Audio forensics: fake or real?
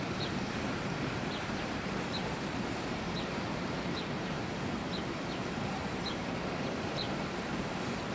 fake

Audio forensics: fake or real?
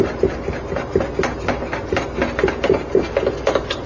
real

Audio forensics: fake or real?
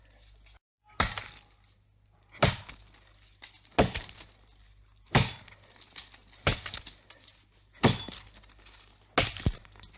real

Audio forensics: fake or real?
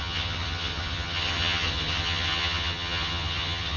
fake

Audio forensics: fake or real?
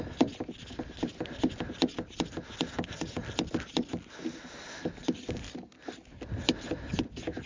real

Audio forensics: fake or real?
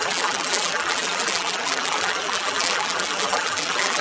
fake